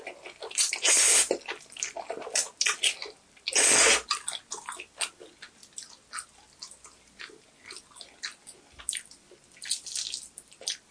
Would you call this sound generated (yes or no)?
no